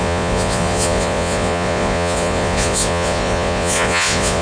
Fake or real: fake